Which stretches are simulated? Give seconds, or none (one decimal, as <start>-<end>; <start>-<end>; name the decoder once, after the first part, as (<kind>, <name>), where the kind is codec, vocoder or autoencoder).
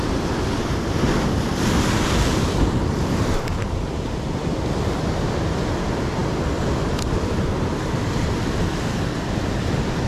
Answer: none